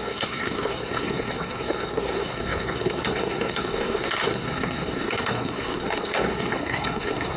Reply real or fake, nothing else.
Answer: fake